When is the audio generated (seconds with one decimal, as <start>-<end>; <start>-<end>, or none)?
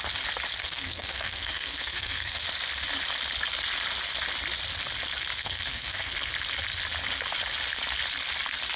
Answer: 0.6-2.4; 5.4-6.1